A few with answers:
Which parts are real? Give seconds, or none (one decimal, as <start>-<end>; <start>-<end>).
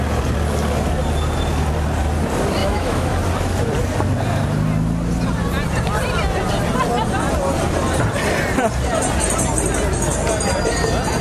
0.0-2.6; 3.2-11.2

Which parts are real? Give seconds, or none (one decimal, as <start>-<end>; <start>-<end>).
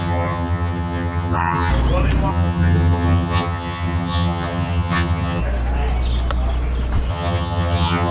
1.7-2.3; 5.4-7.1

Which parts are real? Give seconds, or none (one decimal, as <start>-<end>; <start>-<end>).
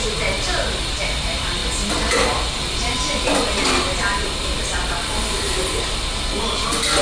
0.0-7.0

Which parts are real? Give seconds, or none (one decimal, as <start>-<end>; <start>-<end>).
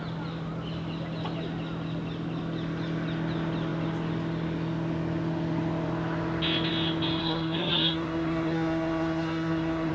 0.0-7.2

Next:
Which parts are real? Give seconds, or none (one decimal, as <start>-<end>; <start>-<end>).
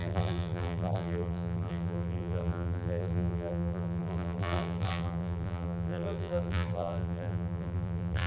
none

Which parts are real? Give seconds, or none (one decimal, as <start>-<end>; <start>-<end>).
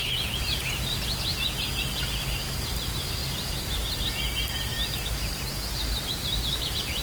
0.8-7.0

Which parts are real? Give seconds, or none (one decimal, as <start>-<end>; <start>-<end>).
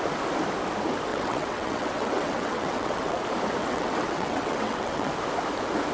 0.0-1.1; 3.2-3.6; 5.1-5.9